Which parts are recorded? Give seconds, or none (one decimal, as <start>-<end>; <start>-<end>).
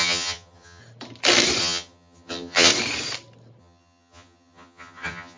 0.8-1.6; 2.7-3.6